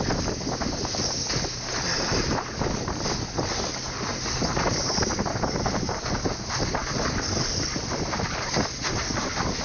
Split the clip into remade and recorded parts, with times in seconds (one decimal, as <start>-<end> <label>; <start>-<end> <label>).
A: 0.0-4.1 recorded; 4.1-8.9 remade; 8.9-9.6 recorded